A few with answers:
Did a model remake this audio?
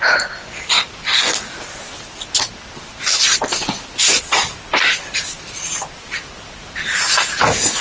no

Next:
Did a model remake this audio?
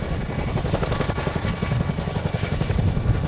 no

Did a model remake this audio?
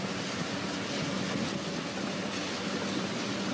no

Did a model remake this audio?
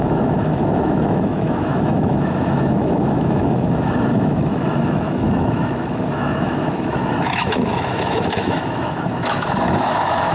yes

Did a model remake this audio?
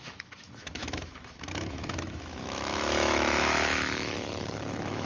yes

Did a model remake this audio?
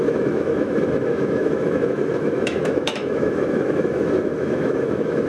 yes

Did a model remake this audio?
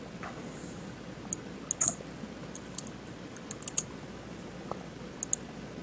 no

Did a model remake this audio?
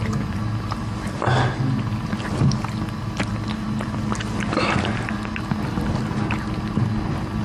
no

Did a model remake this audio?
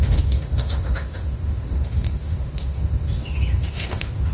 yes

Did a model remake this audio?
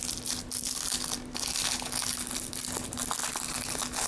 no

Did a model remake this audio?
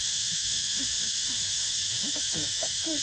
yes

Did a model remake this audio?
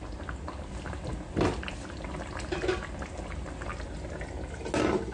no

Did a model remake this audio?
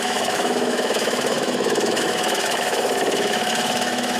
yes